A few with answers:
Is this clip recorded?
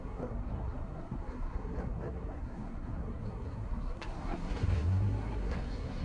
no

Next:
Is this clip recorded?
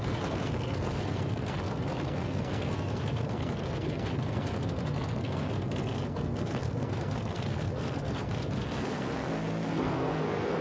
no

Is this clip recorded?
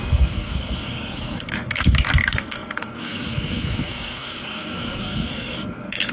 no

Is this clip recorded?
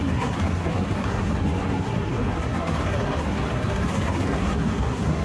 no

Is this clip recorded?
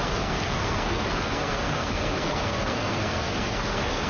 no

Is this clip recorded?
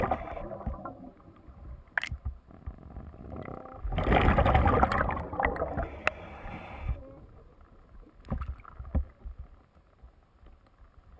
yes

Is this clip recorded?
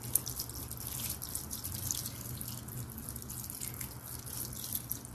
yes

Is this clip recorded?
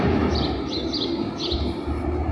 yes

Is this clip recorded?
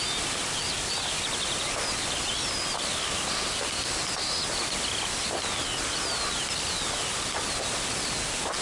yes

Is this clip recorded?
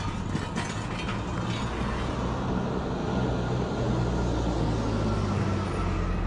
yes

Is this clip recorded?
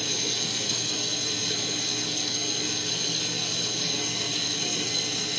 no